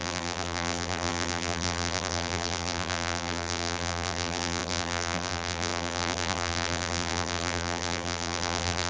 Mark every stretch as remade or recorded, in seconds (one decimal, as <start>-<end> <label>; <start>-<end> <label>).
0.0-8.9 remade